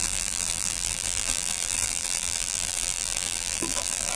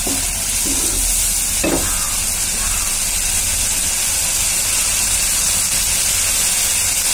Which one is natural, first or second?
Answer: second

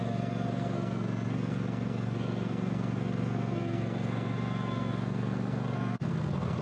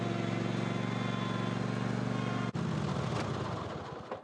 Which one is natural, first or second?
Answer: second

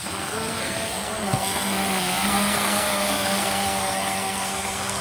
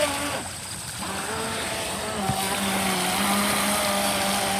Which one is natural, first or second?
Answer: second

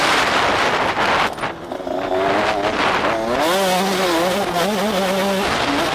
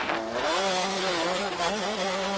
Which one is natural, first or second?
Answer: first